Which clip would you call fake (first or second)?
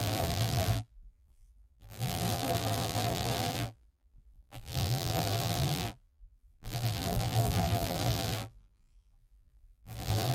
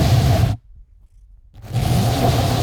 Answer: first